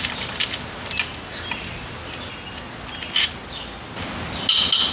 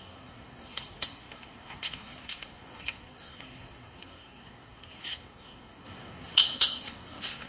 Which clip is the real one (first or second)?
first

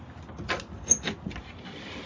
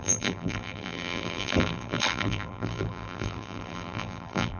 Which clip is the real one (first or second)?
first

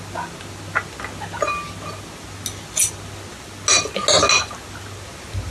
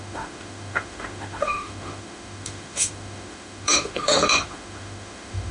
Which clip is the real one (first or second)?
first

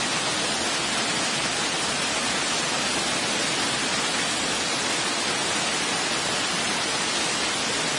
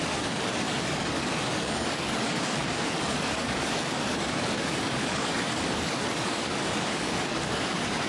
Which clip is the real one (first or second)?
first